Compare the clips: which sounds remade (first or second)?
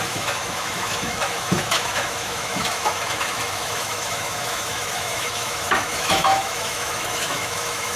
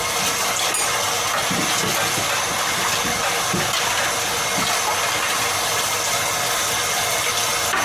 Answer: first